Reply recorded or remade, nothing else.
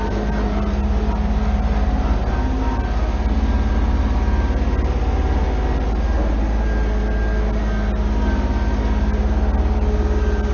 recorded